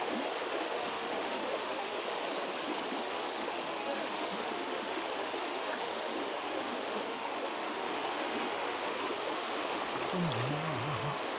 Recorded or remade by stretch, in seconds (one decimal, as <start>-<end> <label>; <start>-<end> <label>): 0.0-2.2 remade; 2.2-3.0 recorded; 3.0-9.8 remade; 9.8-10.5 recorded; 10.5-11.4 remade